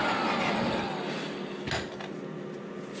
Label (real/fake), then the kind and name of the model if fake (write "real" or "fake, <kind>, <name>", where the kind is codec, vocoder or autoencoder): real